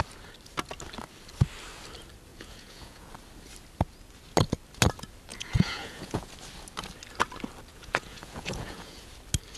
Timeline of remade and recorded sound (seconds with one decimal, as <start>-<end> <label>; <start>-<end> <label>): 0.0-2.3 recorded; 2.3-3.1 remade; 3.1-5.3 recorded; 5.3-6.3 remade; 6.3-7.7 recorded; 7.7-9.1 remade; 9.1-9.6 recorded